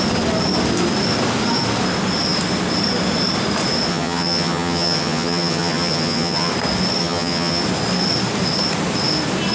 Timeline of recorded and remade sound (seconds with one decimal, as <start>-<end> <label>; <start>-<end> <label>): 0.0-3.9 recorded; 3.9-6.5 remade; 6.5-7.0 recorded; 7.0-7.6 remade; 7.6-9.5 recorded